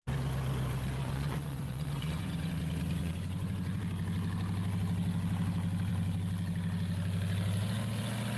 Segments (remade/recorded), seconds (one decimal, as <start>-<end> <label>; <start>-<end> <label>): 0.0-1.0 recorded; 1.0-2.5 remade; 2.5-3.0 recorded; 3.0-3.8 remade; 3.8-8.4 recorded